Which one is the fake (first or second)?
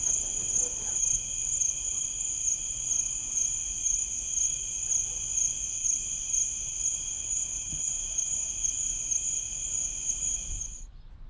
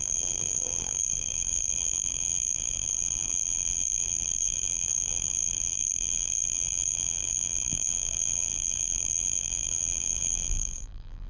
second